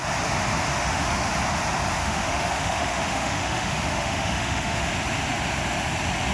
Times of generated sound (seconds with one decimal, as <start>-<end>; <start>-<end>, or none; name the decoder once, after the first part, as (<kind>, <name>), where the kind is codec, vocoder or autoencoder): 0.7-1.3 (autoencoder, DAC-VAE); 2.0-4.9